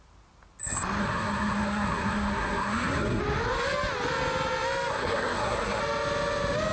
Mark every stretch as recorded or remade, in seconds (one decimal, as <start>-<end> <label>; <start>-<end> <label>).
0.0-1.0 recorded; 1.0-3.2 remade; 3.2-4.9 recorded; 4.9-5.8 remade; 5.8-6.7 recorded